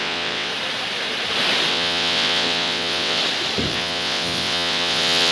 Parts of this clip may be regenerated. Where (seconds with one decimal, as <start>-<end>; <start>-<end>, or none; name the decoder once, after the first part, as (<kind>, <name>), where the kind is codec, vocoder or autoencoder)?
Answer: 0.0-0.5 (vocoder, WaveNeXt); 1.7-3.2; 3.7-5.3